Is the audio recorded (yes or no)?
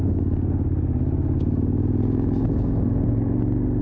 yes